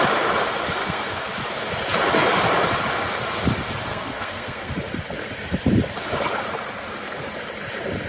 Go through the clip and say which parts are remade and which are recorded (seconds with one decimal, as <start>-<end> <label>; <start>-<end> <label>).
0.0-0.8 recorded; 0.8-1.3 remade; 1.3-3.9 recorded; 3.9-4.7 remade; 4.7-8.1 recorded